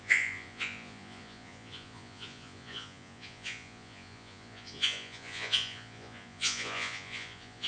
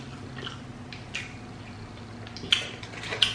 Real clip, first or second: second